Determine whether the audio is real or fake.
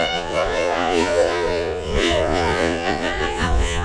fake